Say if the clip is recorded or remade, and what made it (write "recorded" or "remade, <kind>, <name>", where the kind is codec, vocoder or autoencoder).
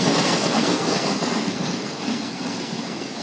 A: remade, codec, SNAC